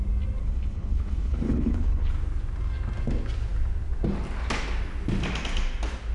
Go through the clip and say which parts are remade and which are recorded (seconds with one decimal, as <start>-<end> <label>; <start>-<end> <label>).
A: 0.0-0.4 recorded; 0.4-2.1 remade; 2.1-6.1 recorded